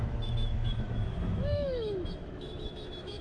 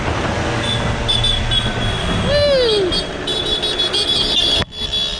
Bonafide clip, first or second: second